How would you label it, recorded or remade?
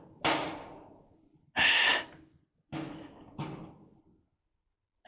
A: recorded